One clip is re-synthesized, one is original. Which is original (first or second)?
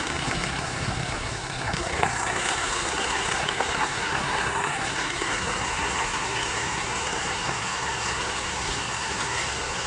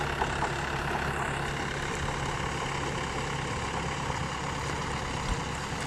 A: second